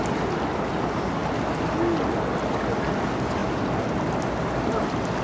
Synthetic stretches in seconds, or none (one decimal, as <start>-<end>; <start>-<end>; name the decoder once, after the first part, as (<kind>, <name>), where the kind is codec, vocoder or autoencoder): none